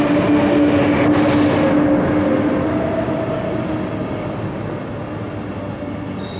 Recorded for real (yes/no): yes